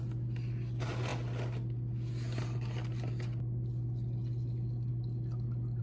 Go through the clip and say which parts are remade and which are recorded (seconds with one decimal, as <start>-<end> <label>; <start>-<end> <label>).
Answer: 0.0-5.8 recorded